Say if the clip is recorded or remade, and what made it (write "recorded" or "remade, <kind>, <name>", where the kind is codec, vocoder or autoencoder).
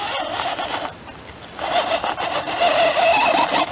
recorded